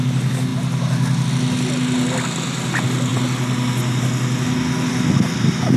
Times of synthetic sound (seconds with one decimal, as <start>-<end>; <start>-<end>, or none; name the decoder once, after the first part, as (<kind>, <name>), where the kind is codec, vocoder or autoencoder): none